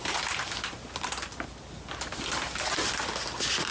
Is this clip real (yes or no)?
yes